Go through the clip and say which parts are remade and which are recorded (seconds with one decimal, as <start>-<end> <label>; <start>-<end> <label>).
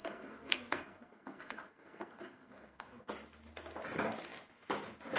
0.0-3.1 remade; 3.1-5.2 recorded